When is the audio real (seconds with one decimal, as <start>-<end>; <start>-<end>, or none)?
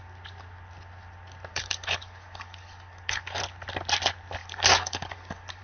0.0-1.5; 3.4-4.4